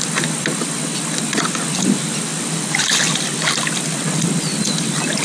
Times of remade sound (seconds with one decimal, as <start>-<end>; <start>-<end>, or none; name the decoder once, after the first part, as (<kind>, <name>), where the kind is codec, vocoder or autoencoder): none